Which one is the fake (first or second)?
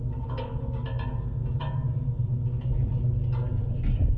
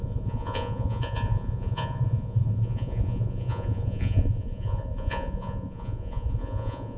second